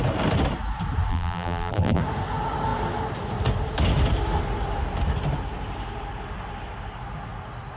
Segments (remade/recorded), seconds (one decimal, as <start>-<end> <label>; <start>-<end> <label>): 0.0-1.1 recorded; 1.1-2.0 remade; 2.0-7.8 recorded